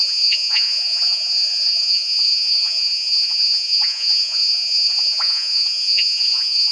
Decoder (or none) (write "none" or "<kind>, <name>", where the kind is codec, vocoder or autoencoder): vocoder, Vocos